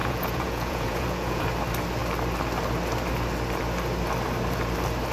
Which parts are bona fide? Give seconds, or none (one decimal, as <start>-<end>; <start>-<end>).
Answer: 1.4-5.1